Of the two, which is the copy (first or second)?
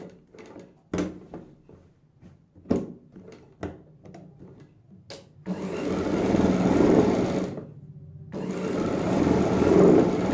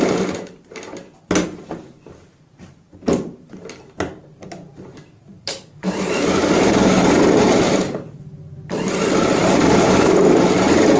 second